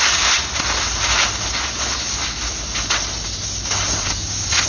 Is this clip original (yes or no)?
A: yes